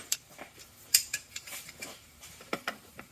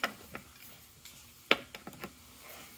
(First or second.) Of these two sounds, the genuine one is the second